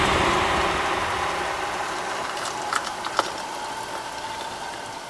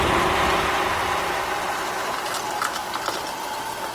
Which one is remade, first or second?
first